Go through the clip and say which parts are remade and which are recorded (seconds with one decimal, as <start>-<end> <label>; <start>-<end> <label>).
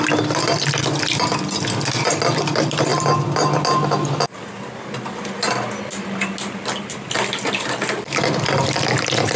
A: 0.0-9.4 recorded